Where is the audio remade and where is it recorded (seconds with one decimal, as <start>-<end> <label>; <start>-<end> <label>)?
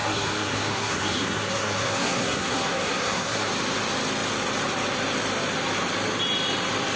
0.0-3.5 remade; 3.5-7.0 recorded